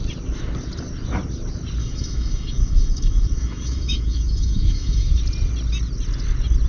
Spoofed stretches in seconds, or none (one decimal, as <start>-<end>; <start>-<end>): 1.8-5.2